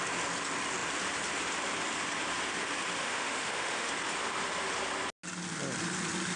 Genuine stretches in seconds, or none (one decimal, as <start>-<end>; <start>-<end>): 0.0-3.0; 3.9-6.4